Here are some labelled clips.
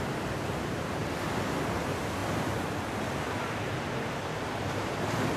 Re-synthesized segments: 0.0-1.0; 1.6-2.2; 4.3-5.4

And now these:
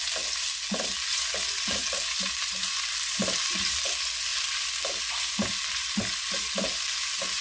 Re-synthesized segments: none

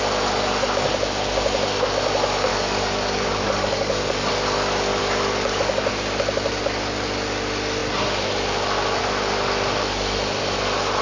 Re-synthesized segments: 2.5-4.3; 5.0-5.9

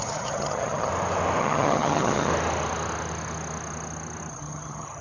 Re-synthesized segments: 0.0-0.9; 1.4-2.3; 4.3-5.0